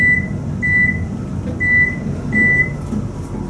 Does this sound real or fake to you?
real